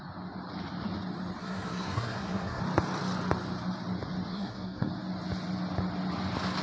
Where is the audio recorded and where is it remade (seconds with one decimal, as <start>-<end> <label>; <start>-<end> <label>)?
0.0-1.4 recorded; 1.4-2.6 remade; 2.6-4.3 recorded; 4.3-4.9 remade; 4.9-6.6 recorded